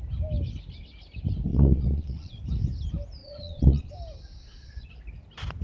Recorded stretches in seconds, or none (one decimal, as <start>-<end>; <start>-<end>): 0.0-1.5; 2.4-3.2; 3.9-4.3; 4.9-5.6